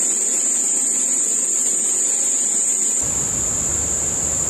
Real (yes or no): no